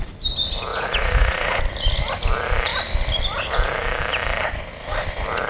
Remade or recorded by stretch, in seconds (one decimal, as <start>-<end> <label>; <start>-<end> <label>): 0.0-0.7 recorded; 0.7-1.6 remade; 1.6-5.5 recorded